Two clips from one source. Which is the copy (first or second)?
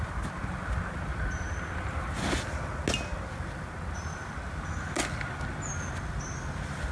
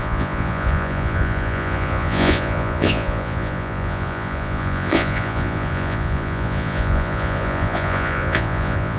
second